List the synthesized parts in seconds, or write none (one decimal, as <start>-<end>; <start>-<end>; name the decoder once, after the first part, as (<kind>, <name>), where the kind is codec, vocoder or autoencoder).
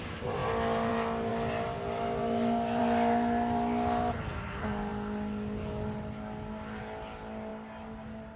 none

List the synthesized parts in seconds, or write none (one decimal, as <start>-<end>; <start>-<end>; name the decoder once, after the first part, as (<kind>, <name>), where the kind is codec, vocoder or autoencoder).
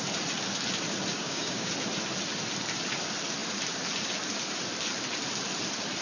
1.1-1.7 (codec, DAC)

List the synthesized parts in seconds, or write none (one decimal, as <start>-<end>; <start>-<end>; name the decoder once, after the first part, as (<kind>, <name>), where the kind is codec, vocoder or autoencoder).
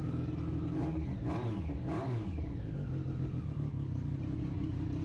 0.0-1.1 (codec, DAC); 1.6-5.0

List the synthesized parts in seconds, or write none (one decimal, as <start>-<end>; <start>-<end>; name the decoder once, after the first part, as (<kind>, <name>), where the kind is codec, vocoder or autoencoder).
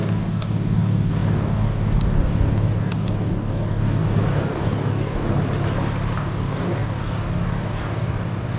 0.0-5.3 (codec, DAC); 6.2-8.6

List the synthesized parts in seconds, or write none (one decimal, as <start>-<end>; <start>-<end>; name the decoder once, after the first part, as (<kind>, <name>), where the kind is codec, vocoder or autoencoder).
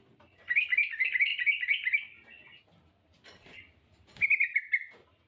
none